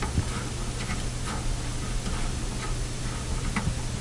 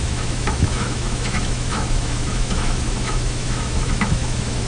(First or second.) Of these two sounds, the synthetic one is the second